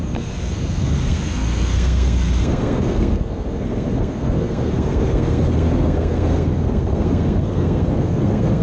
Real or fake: fake